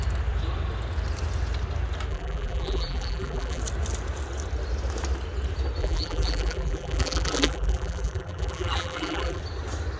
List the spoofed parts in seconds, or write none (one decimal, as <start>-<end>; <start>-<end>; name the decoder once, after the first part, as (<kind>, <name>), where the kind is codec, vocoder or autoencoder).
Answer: 2.1-3.6 (vocoder, BigVGAN v2); 5.8-9.4